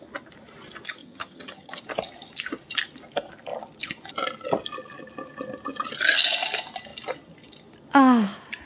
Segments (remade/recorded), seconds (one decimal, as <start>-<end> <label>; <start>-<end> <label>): 0.0-1.0 recorded; 1.0-1.8 remade; 1.8-8.7 recorded